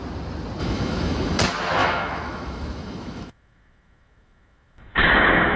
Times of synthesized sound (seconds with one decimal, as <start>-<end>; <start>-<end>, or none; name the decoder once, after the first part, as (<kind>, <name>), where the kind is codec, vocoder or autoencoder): 0.6-1.4 (autoencoder, DAC-VAE); 1.8-5.6

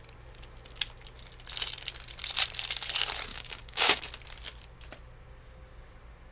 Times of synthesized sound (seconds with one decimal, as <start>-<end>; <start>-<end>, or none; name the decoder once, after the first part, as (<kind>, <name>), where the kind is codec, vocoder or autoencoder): 3.3-4.0 (codec, DAC)

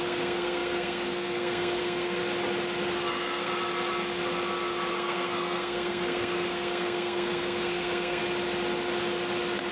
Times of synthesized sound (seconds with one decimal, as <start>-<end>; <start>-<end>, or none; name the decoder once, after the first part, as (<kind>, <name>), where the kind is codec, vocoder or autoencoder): 0.0-2.2 (codec, SNAC); 3.1-3.5; 4.9-8.2

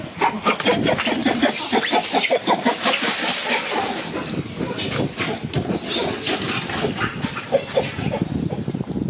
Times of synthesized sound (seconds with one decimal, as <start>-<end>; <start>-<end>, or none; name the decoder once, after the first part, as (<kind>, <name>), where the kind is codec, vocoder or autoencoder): none

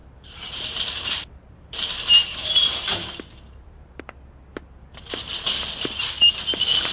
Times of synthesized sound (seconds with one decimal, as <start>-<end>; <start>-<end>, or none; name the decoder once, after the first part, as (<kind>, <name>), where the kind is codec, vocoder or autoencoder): 0.0-4.0 (vocoder, BigVGAN v2)

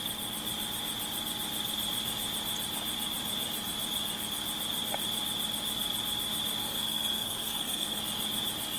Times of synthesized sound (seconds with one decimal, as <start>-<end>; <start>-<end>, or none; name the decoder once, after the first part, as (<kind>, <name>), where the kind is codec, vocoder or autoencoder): 6.6-8.0 (codec, SNAC)

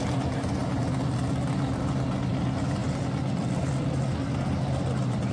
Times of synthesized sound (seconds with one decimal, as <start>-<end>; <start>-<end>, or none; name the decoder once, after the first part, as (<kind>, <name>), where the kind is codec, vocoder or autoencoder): none

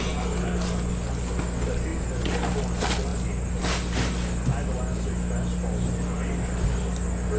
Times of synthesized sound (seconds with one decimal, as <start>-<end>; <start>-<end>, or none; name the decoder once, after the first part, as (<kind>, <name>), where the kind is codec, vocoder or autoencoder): none